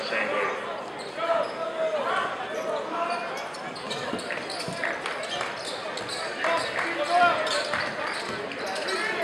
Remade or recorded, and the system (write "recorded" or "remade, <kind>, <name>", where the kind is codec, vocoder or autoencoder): recorded